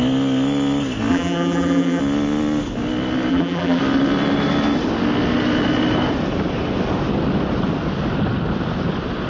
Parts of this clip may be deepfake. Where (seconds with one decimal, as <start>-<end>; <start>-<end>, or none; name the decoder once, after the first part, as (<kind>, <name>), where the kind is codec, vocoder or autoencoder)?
1.1-2.0 (vocoder, BigVGAN v2); 3.3-3.8